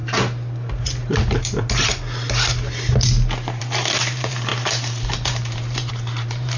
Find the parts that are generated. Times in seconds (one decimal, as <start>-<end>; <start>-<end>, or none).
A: 3.6-6.6

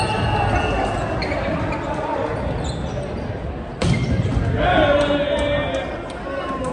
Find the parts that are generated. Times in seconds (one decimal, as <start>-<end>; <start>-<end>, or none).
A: 3.7-4.4

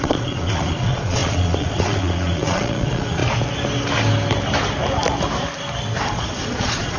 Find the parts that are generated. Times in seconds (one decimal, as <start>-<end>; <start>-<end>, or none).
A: 0.0-3.2; 6.0-7.0